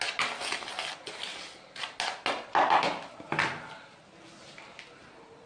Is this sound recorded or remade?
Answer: recorded